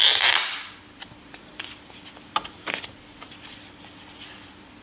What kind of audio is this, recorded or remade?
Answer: recorded